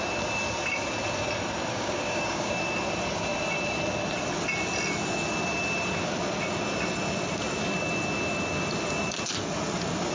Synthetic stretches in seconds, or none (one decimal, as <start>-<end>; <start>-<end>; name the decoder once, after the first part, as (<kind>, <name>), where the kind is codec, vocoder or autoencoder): 1.7-2.5 (codec, DAC)